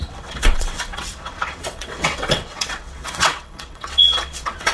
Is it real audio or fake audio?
fake